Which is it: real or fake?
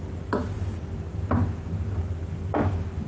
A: real